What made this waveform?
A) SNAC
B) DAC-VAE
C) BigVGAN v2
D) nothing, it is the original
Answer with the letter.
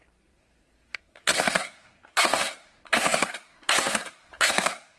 A